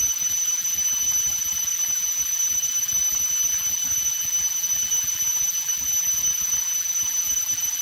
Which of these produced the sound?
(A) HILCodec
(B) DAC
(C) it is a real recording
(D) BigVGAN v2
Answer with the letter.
D